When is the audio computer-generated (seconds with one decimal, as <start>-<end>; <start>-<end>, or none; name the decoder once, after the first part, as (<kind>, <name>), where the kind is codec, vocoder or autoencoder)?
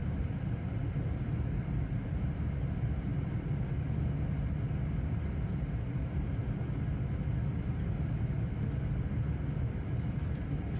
0.0-3.1 (vocoder, BigVGAN v2); 7.6-10.8